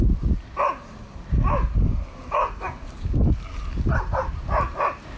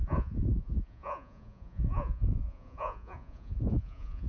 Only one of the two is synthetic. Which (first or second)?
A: second